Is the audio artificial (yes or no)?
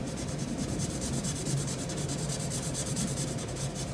yes